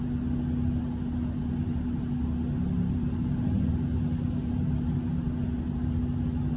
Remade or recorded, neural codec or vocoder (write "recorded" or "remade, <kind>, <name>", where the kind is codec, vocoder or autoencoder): recorded